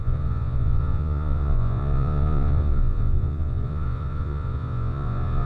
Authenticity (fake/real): fake